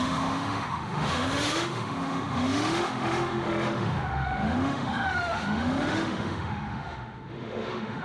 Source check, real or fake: fake